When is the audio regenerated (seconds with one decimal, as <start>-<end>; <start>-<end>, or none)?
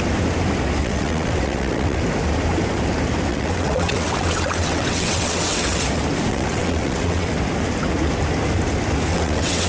0.8-2.0; 3.3-5.8; 6.3-7.3; 9.1-9.7